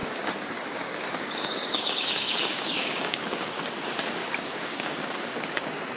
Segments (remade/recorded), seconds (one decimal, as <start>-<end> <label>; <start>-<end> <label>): 0.0-3.6 remade; 3.6-4.2 recorded; 4.2-6.0 remade